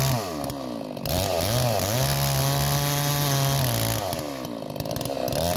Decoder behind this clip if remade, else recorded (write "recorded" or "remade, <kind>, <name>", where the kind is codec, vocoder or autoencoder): recorded